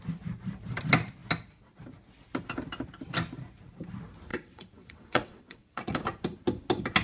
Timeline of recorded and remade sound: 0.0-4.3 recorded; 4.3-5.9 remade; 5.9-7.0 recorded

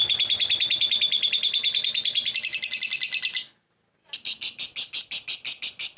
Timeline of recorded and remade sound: 0.0-6.0 recorded

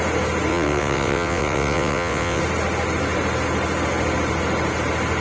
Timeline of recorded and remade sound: 0.0-0.5 recorded; 0.5-2.4 remade; 2.4-5.2 recorded

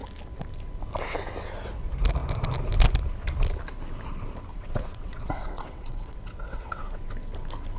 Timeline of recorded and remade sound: 0.0-4.5 recorded; 4.5-7.0 remade; 7.0-7.8 recorded